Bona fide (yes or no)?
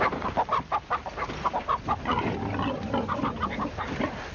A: no